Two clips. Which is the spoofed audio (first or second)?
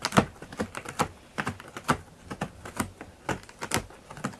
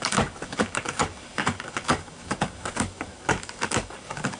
second